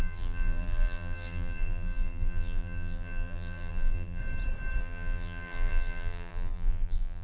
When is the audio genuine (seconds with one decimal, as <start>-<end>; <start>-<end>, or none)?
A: 4.2-4.8